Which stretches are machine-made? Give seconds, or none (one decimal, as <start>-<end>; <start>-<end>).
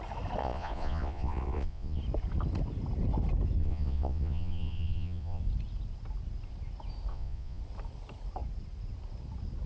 0.4-2.0; 3.6-5.4; 7.1-7.6